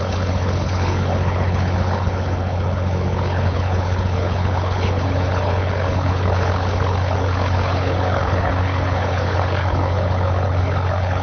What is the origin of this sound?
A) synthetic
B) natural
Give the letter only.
A